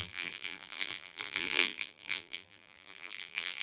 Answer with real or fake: fake